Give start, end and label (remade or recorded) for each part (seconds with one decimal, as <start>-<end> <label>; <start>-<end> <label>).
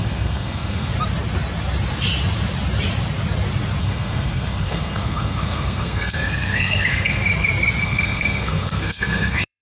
0.0-0.9 remade; 0.9-3.8 recorded; 3.8-7.2 remade; 7.2-7.8 recorded; 7.8-9.6 remade